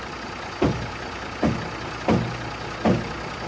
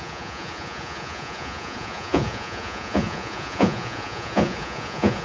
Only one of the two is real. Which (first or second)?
first